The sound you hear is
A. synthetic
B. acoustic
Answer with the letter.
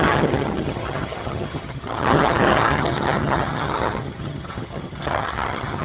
A